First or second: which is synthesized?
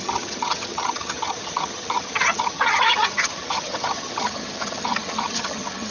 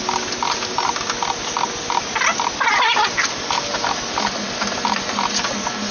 first